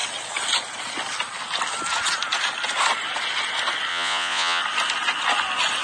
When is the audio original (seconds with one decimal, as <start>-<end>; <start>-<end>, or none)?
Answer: 0.0-3.9; 4.6-5.8